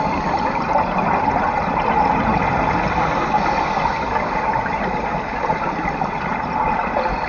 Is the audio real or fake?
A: real